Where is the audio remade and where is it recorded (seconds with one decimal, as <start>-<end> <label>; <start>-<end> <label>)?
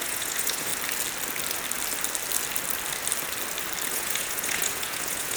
0.0-0.7 remade; 0.7-3.9 recorded; 3.9-5.4 remade